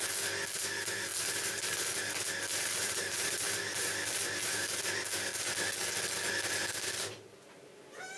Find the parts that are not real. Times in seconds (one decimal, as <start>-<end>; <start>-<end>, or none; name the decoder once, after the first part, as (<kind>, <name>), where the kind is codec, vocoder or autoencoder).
1.1-1.8 (vocoder, BigVGAN v2); 2.5-4.7